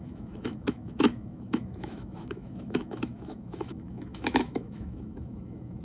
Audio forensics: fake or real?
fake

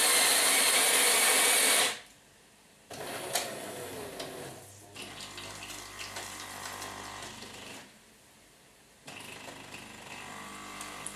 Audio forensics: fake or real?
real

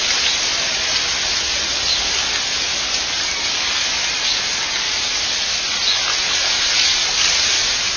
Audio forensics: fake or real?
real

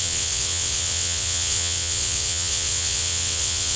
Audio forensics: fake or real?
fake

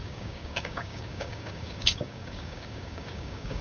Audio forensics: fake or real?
fake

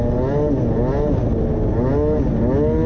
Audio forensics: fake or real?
real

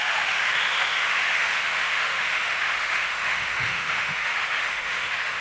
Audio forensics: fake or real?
fake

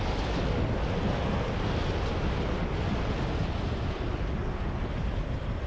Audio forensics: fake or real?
real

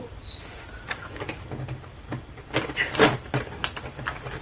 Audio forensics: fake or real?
real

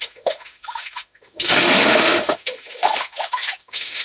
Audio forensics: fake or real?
fake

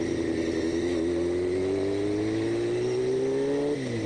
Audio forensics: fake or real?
real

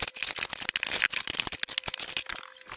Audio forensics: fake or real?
real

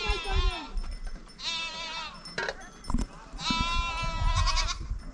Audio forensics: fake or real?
real